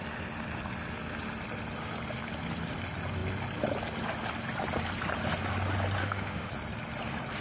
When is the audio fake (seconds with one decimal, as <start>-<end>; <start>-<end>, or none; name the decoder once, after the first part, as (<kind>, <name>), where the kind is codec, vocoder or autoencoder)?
6.0-6.5 (autoencoder, DAC-VAE)